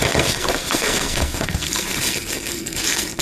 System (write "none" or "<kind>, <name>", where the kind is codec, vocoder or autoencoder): codec, SNAC